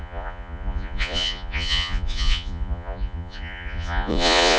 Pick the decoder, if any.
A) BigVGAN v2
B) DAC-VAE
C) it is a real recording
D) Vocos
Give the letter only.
D